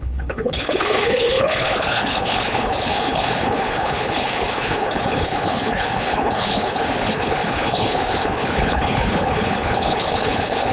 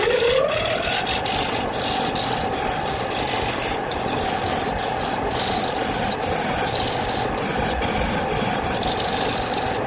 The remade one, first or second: first